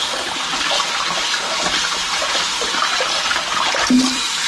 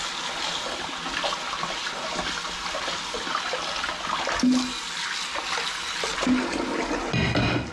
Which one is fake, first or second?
first